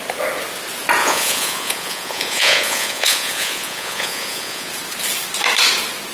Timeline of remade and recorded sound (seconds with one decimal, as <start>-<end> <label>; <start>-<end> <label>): 0.0-1.0 recorded; 1.0-4.7 remade; 4.7-6.1 recorded